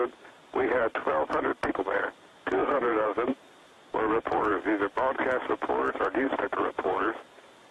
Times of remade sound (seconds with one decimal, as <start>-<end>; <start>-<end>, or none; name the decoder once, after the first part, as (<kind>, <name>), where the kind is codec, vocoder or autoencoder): 0.0-1.0 (vocoder, BigVGAN v2); 1.7-4.5; 5.9-7.7